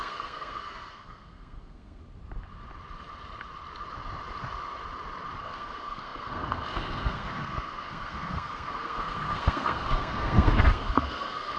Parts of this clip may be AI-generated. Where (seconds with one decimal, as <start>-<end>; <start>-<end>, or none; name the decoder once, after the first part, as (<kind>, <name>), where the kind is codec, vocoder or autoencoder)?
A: 0.0-2.0 (codec, SNAC); 5.4-11.6